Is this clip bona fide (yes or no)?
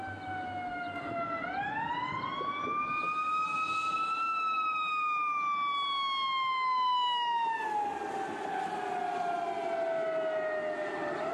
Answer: yes